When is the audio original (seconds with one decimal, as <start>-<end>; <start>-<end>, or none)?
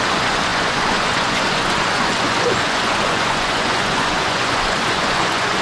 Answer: none